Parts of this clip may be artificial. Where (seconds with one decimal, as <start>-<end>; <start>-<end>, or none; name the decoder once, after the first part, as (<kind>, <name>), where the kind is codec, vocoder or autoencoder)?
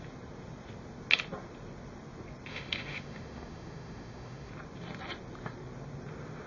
2.5-4.5 (autoencoder, DAC-VAE)